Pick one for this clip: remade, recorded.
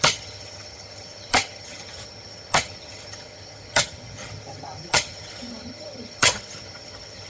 remade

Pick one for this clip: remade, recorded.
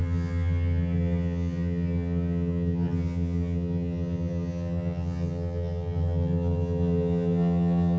remade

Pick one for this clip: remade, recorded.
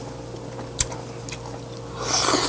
recorded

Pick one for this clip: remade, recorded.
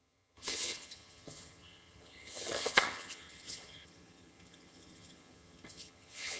remade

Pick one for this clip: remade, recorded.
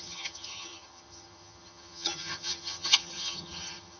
remade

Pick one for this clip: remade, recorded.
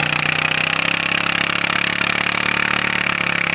recorded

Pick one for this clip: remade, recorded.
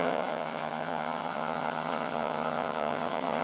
remade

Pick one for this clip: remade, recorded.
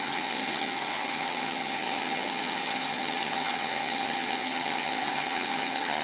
remade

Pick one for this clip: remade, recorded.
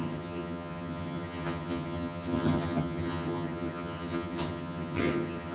remade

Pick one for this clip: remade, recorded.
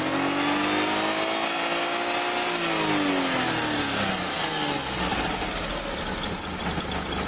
recorded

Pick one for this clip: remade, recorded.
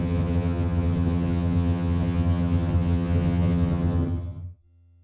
remade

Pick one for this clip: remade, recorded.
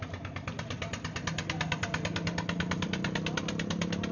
recorded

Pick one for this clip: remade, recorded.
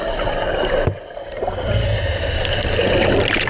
recorded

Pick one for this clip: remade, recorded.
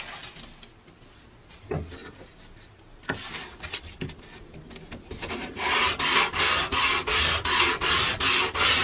recorded